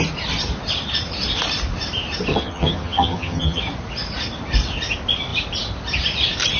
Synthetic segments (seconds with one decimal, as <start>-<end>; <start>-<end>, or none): 2.3-3.6